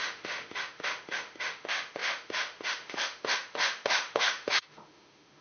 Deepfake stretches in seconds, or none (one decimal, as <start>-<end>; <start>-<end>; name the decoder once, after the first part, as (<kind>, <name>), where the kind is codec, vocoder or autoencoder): 0.0-5.4 (autoencoder, DAC-VAE)